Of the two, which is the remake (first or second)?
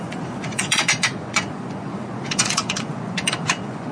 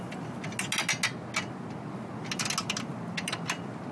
first